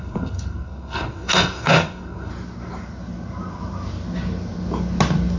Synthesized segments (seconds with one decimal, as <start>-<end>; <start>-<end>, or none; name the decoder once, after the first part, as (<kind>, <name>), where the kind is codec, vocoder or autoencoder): 0.0-2.3 (codec, SNAC)